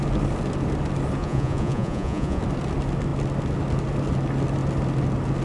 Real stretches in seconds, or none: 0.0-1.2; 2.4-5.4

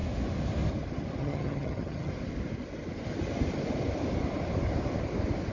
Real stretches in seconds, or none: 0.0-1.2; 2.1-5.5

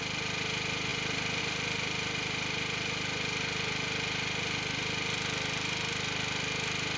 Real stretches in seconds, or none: 0.0-7.0